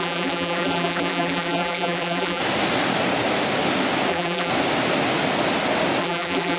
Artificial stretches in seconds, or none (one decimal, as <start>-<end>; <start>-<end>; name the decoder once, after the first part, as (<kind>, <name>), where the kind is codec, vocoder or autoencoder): 0.0-2.4 (vocoder, BigVGAN v2); 4.1-4.5; 6.0-6.6